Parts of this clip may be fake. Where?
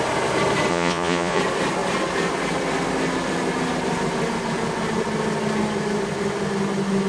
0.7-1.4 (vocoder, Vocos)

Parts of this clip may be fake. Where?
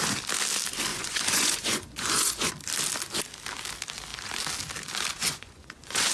0.9-2.5 (vocoder, Vocos); 5.2-6.1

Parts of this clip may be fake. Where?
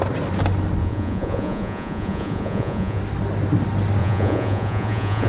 0.8-3.0 (vocoder, Vocos); 4.0-5.3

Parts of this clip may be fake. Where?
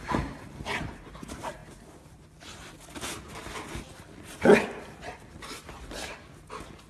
none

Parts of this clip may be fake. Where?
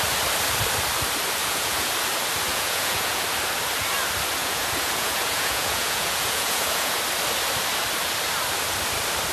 1.4-1.9 (vocoder, Vocos); 2.5-3.2; 4.4-7.0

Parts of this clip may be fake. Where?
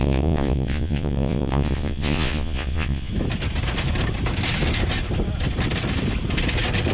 0.0-3.1 (vocoder, Vocos)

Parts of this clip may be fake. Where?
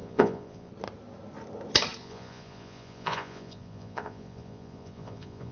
0.0-0.7 (vocoder, Vocos); 2.0-5.5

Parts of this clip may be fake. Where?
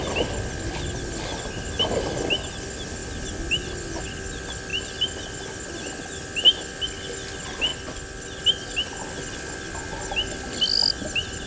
none